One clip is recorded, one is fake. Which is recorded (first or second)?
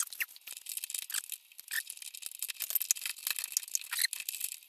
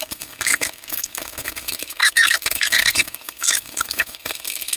first